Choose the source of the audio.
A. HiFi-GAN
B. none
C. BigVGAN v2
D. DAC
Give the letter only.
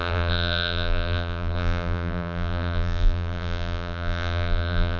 C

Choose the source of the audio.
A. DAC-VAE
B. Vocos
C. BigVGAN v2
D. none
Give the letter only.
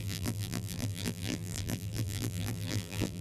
C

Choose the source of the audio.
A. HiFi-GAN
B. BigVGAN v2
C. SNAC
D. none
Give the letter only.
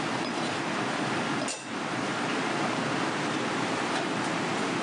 B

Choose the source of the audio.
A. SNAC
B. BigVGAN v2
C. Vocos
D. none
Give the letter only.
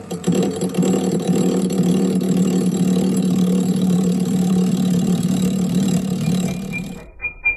B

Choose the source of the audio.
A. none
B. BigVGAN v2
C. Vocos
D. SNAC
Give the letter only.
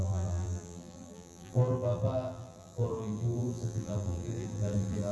B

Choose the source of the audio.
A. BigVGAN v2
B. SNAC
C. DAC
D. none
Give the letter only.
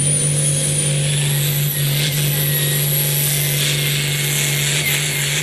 D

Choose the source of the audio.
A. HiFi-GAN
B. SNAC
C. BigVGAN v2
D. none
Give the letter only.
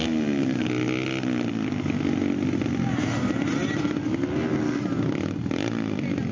D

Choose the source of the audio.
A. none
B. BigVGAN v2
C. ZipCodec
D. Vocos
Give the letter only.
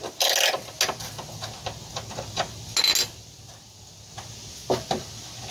A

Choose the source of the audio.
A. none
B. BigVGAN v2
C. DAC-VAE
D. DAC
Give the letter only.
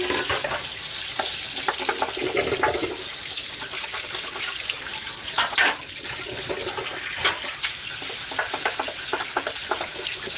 A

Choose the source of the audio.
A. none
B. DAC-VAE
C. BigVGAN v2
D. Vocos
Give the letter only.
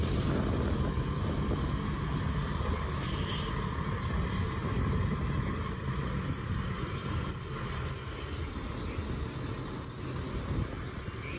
A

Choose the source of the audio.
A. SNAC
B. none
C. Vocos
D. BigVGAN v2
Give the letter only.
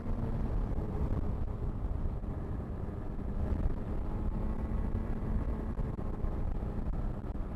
D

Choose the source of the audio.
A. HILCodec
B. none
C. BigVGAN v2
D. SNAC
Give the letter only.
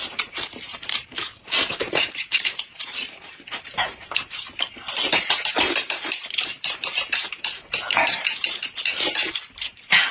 C